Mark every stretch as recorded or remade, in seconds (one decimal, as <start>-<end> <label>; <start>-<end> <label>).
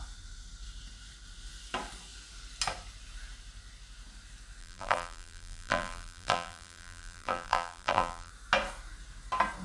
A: 0.0-4.6 recorded; 4.6-8.3 remade; 8.3-9.6 recorded